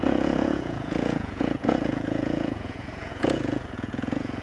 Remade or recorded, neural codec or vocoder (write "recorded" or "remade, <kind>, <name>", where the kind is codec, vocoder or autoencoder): remade, vocoder, Vocos